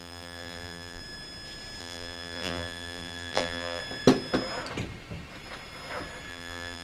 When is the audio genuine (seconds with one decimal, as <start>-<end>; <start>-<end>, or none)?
1.0-1.8; 3.8-6.3